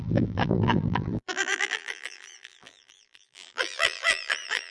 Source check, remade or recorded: remade